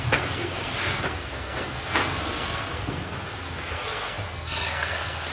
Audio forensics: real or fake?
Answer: fake